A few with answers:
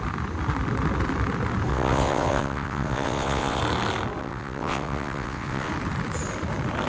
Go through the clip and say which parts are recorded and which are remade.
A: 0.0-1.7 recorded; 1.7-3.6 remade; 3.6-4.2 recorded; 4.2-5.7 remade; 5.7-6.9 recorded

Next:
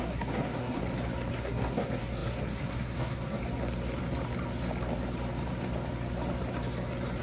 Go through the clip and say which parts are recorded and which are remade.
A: 0.0-0.8 remade; 0.8-1.3 recorded; 1.3-3.4 remade; 3.4-7.2 recorded

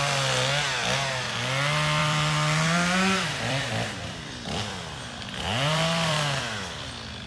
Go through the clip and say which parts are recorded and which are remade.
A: 0.0-2.0 recorded; 2.0-6.4 remade; 6.4-7.3 recorded

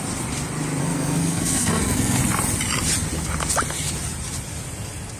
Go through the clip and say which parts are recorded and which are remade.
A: 0.0-0.8 recorded; 0.8-2.2 remade; 2.2-5.2 recorded

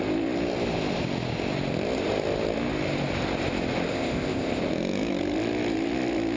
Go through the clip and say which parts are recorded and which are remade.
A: 0.0-3.9 recorded; 3.9-4.6 remade; 4.6-6.4 recorded

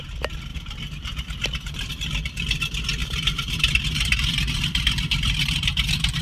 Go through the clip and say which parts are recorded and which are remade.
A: 0.0-0.5 recorded; 0.5-1.9 remade; 1.9-3.0 recorded; 3.0-6.2 remade

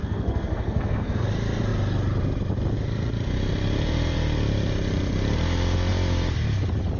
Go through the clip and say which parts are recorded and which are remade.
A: 0.0-1.2 remade; 1.2-7.0 recorded